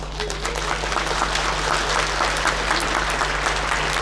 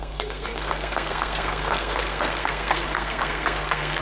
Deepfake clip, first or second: second